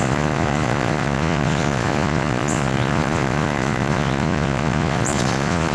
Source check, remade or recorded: remade